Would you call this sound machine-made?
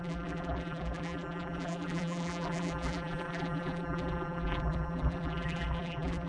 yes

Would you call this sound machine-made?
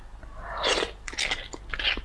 no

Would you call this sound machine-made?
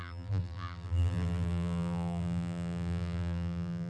yes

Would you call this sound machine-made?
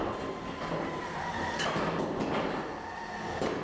no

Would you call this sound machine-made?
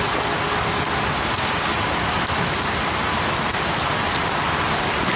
no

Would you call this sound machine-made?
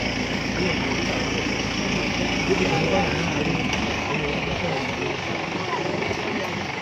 yes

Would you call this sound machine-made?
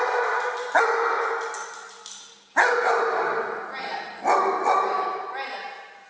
no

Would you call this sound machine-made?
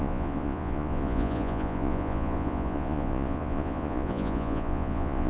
yes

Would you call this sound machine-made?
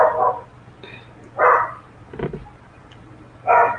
yes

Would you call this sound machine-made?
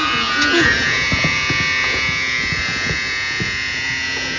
yes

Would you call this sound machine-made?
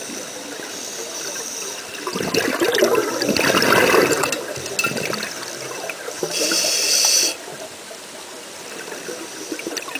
no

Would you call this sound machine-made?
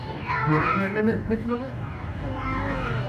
yes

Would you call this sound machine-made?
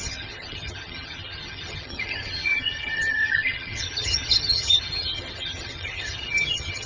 yes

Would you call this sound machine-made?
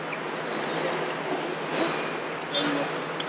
no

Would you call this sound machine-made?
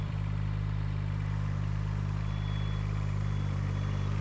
yes